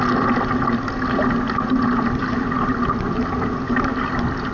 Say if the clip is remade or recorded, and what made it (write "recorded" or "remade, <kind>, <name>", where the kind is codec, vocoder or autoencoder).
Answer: recorded